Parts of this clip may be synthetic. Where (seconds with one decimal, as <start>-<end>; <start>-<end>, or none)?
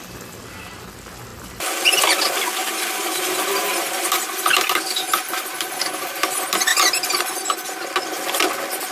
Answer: 2.6-6.3; 6.7-7.2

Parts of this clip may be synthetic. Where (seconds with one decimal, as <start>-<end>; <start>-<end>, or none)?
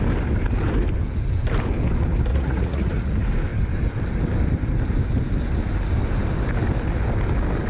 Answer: 2.3-3.1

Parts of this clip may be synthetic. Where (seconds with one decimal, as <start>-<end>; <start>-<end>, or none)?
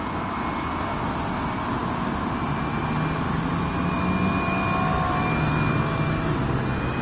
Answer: none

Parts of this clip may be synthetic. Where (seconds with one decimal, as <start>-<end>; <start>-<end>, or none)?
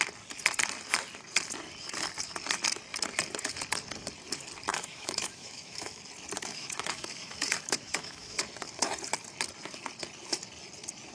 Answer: 4.7-6.0; 6.5-8.5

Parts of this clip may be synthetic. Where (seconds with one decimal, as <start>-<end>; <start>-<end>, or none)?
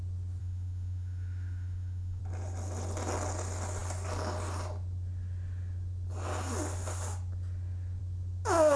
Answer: 0.4-2.2